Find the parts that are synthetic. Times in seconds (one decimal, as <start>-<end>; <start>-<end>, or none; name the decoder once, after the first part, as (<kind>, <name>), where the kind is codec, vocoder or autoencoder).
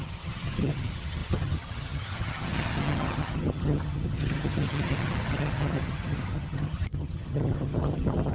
0.0-8.3 (vocoder, HiFi-GAN)